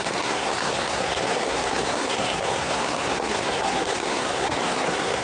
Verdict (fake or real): fake